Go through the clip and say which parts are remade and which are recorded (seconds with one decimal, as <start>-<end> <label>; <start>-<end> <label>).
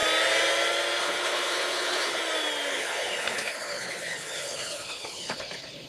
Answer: 0.0-1.0 recorded; 1.0-2.2 remade; 2.2-2.7 recorded; 2.7-5.9 remade